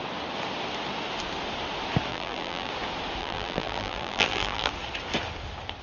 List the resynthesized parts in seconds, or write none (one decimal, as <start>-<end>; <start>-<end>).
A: 2.1-2.7; 3.2-4.7

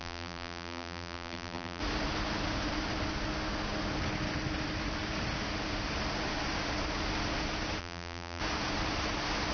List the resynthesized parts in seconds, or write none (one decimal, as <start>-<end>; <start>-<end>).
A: 0.0-1.8; 7.8-8.4

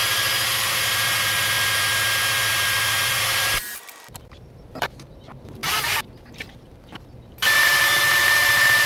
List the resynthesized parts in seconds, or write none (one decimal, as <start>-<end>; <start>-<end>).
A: 0.0-8.9